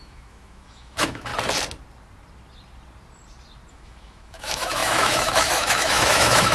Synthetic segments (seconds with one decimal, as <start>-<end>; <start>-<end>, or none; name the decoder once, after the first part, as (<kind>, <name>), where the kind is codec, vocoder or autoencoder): 0.0-1.3 (autoencoder, DAC-VAE); 3.7-6.5